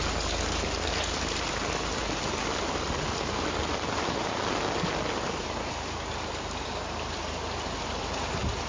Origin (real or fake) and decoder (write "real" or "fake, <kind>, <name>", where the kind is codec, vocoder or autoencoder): real